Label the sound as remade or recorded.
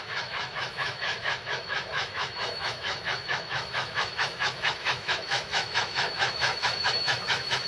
remade